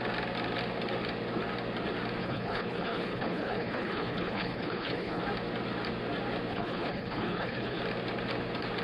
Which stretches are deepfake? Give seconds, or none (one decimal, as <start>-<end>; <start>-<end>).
2.2-5.2; 6.5-7.8